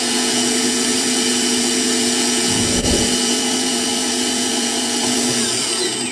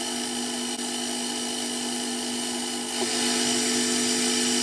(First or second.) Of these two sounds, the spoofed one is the first